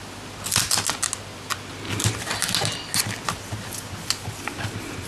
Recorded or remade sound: recorded